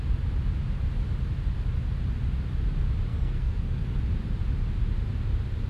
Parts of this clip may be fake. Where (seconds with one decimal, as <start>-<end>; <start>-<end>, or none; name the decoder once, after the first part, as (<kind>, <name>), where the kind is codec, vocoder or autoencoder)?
3.1-4.0 (codec, SNAC)